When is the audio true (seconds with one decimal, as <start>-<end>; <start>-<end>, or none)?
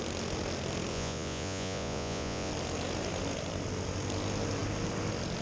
0.0-0.9; 2.5-5.4